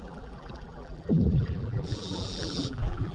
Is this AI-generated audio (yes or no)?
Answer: yes